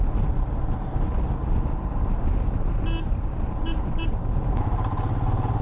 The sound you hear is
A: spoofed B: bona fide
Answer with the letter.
B